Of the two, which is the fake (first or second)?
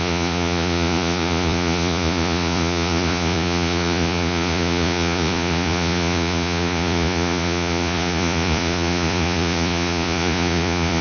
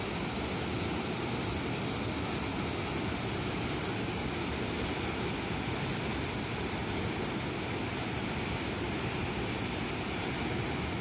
first